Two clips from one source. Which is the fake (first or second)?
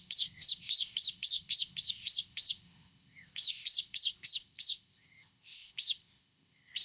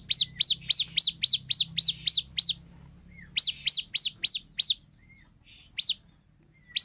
first